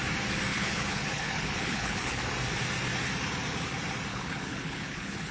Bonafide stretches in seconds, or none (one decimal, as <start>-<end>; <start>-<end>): 0.0-0.5; 2.3-4.1